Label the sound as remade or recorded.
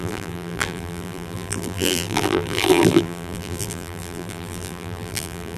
remade